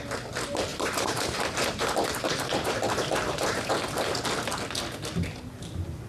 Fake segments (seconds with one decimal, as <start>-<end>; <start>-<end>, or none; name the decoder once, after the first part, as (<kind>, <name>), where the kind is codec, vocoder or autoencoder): 0.7-3.7 (vocoder, BigVGAN v2)